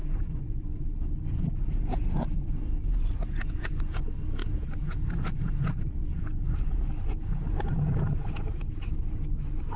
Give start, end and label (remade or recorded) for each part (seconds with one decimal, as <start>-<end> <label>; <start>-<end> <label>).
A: 0.0-4.0 remade; 4.0-4.4 recorded; 4.4-6.4 remade; 6.4-7.1 recorded; 7.1-7.6 remade; 7.6-9.8 recorded